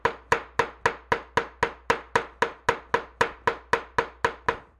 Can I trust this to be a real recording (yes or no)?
yes